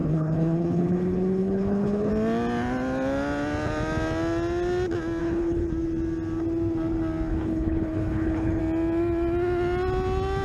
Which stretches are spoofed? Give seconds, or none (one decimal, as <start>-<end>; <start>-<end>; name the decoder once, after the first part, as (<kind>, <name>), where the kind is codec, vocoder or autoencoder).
0.0-2.1 (codec, HILCodec); 5.2-5.7; 7.3-8.6